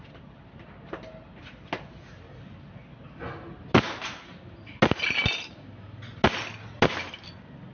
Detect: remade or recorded recorded